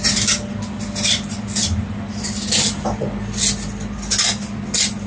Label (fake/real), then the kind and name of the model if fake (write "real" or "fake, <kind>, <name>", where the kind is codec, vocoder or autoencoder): real